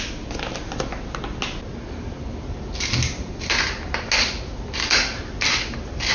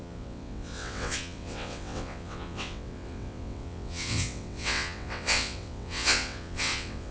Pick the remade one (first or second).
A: second